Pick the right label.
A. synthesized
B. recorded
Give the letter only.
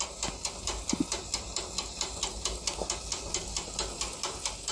B